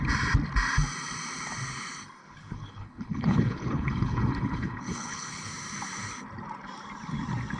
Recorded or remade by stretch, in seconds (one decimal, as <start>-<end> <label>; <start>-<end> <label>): 0.0-2.2 recorded; 2.2-5.5 remade; 5.5-7.6 recorded